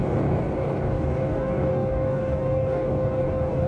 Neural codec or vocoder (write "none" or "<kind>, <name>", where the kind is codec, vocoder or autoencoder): codec, DAC